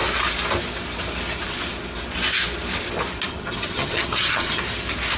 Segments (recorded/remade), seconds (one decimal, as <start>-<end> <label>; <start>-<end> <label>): 0.0-3.3 recorded; 3.3-4.6 remade; 4.6-5.2 recorded